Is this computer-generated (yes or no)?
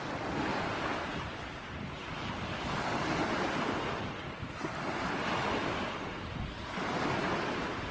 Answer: no